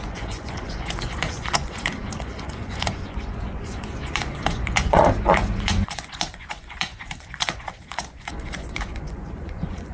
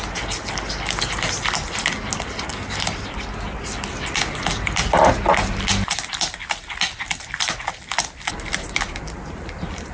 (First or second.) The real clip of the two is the second